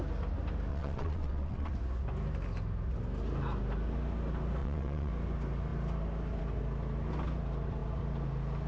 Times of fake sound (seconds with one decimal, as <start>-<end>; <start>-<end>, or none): 0.7-1.7; 4.6-5.1